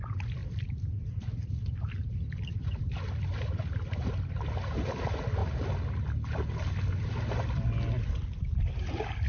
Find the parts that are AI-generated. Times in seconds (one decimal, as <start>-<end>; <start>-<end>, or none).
none